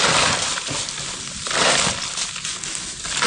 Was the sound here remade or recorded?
recorded